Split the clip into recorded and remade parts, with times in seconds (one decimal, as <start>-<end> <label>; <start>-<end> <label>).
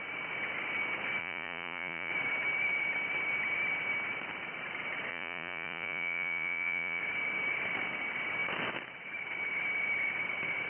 0.0-1.2 recorded; 1.2-2.1 remade; 2.1-5.1 recorded; 5.1-7.0 remade; 7.0-10.7 recorded